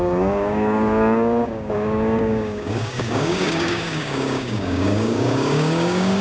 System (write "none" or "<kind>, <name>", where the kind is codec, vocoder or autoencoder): codec, DAC